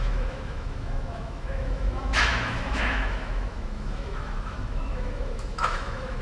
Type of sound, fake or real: fake